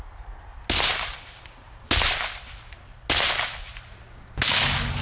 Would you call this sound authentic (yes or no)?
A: yes